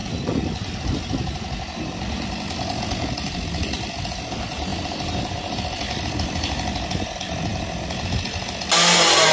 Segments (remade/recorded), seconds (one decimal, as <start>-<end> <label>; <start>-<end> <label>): 0.0-4.7 recorded; 4.7-6.5 remade; 6.5-7.5 recorded; 7.5-8.7 remade; 8.7-9.3 recorded